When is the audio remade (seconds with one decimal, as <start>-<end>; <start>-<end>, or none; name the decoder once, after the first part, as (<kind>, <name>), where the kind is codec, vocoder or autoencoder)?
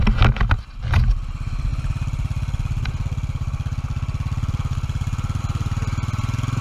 none